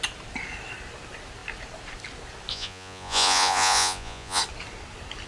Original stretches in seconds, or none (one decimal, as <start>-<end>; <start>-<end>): 0.0-2.5; 4.4-5.3